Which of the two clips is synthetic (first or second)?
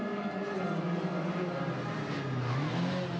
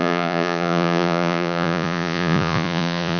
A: second